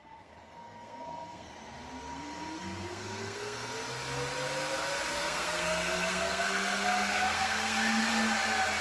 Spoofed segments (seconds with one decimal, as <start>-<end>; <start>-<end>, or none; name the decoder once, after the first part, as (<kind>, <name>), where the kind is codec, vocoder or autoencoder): 0.0-1.5 (codec, SNAC); 2.1-3.7; 5.1-8.1